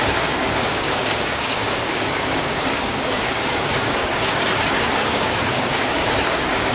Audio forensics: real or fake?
fake